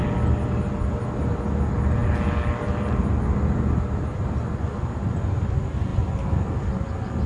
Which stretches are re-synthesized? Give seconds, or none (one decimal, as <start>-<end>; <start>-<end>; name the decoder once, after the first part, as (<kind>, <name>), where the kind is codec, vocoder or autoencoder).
none